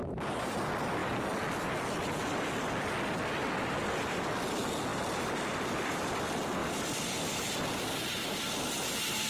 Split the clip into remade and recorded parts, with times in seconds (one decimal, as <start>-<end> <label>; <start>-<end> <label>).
0.0-3.4 recorded; 3.4-4.0 remade; 4.0-6.6 recorded; 6.6-8.7 remade; 8.7-9.3 recorded